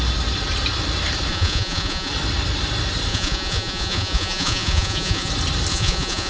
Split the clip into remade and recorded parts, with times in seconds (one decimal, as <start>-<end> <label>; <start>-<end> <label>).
0.0-1.3 recorded; 1.3-2.1 remade; 2.1-3.1 recorded; 3.1-5.3 remade; 5.3-5.7 recorded; 5.7-6.3 remade